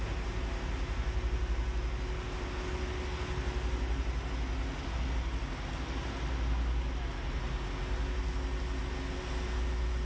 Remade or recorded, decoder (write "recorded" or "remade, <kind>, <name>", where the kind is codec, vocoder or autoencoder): recorded